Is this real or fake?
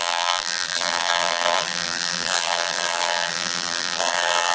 fake